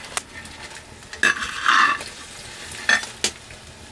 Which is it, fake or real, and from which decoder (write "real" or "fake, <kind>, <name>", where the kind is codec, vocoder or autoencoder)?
real